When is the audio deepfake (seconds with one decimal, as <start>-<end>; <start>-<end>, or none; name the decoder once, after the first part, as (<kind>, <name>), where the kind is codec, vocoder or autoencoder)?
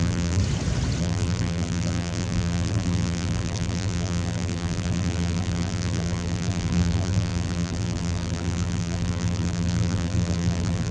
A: 0.0-0.4 (vocoder, BigVGAN v2); 1.0-10.9